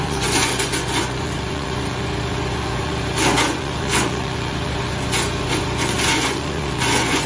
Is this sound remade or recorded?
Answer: remade